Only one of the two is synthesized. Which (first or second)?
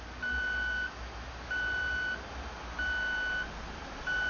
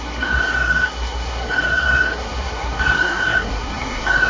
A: second